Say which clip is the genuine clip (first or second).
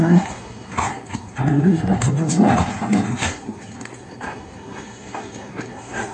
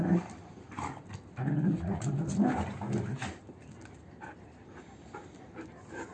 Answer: second